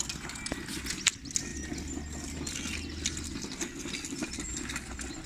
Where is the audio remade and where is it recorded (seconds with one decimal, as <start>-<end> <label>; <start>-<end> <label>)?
0.0-5.3 recorded